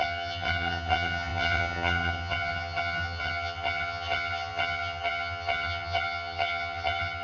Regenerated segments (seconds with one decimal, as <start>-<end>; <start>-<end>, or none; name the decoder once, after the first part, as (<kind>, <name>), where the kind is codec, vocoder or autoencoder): 0.0-7.2 (vocoder, HiFi-GAN)